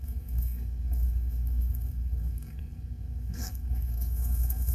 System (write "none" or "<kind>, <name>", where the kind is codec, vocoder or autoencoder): codec, SNAC